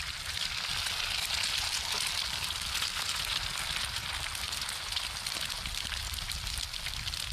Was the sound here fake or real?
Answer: real